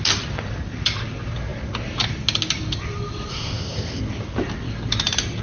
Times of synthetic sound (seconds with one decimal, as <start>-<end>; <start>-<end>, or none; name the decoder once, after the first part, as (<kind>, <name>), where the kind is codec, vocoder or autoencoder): 3.3-4.0 (codec, ZipCodec)